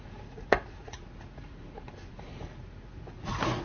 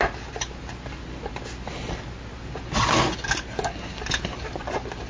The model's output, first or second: first